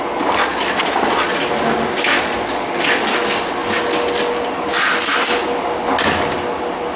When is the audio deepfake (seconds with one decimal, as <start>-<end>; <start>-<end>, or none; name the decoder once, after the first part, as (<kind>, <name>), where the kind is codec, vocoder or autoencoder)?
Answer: 0.4-1.5 (vocoder, Vocos); 2.1-3.0